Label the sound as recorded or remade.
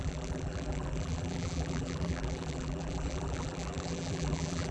remade